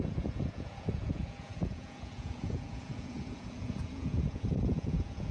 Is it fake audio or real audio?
fake